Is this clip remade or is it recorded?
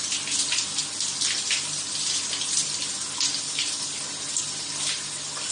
recorded